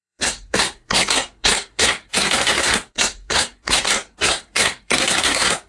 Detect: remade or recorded remade